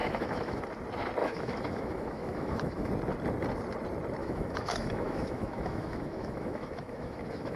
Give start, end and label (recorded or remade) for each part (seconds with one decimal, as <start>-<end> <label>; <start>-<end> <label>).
0.0-0.6 remade; 0.6-1.2 recorded; 1.2-2.9 remade; 2.9-4.2 recorded; 4.2-7.6 remade